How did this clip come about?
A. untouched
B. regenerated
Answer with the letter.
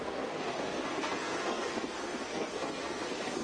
B